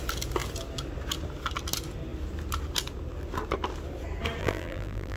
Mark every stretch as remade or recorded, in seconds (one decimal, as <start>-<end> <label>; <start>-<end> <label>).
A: 0.0-4.4 recorded; 4.4-5.2 remade